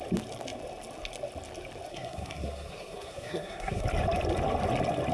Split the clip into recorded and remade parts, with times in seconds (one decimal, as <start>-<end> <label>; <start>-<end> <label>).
0.0-1.9 recorded; 1.9-3.8 remade; 3.8-5.1 recorded